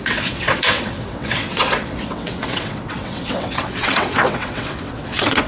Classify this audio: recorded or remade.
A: remade